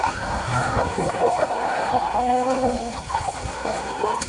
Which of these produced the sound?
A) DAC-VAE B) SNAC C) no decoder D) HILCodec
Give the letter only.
B